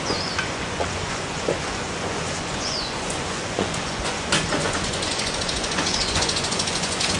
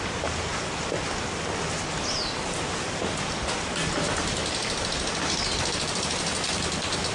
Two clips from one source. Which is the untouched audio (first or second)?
second